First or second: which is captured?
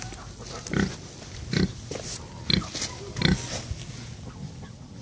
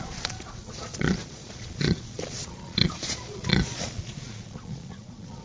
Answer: first